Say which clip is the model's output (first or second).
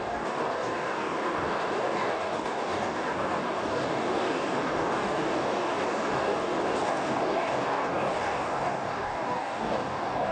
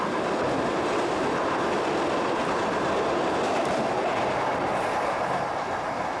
first